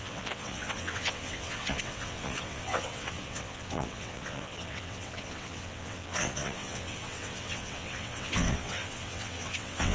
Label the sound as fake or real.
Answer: fake